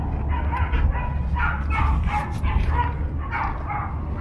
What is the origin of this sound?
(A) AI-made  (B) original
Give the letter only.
B